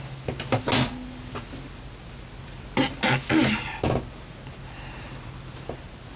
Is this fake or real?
real